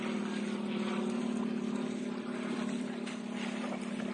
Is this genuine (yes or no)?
yes